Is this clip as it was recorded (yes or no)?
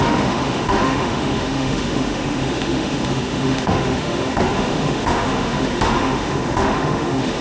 no